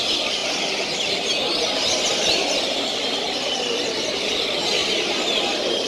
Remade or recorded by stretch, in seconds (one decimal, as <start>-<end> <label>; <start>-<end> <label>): 0.0-5.9 recorded